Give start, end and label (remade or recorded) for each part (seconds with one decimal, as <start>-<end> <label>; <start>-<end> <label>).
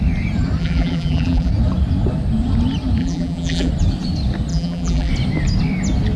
0.0-0.6 recorded; 0.6-1.5 remade; 1.5-3.0 recorded; 3.0-3.7 remade; 3.7-4.5 recorded; 4.5-5.1 remade; 5.1-6.2 recorded